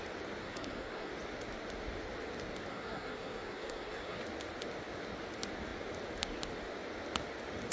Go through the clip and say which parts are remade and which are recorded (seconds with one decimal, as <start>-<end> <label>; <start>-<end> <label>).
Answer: 0.0-0.4 recorded; 0.4-1.1 remade; 1.1-2.7 recorded; 2.7-4.2 remade; 4.2-7.7 recorded